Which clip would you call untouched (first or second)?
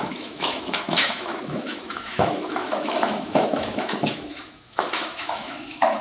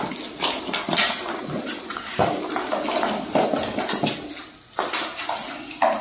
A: second